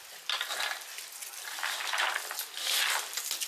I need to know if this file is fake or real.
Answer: real